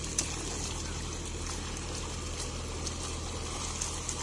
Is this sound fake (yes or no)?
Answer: no